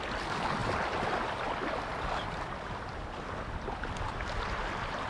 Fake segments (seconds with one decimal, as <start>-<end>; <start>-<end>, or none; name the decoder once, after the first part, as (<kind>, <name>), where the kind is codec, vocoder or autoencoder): 0.6-1.3 (vocoder, BigVGAN v2); 1.9-5.1